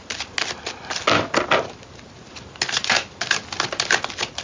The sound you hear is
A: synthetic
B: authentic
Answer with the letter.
B